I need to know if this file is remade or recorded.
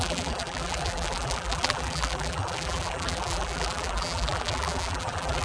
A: remade